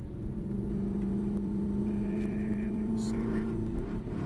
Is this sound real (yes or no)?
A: no